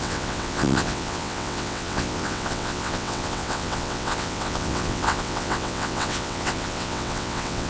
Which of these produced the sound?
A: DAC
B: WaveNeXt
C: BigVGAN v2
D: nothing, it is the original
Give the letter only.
B